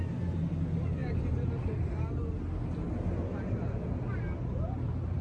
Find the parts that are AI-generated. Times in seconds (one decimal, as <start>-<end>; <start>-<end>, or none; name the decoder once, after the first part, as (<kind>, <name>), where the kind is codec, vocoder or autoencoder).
1.0-1.8 (vocoder, BigVGAN v2); 3.3-5.2